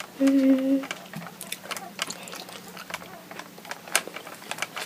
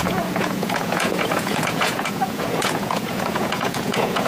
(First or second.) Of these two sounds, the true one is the first